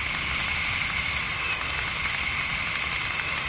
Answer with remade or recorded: recorded